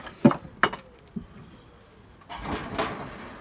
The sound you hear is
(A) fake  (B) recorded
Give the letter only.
B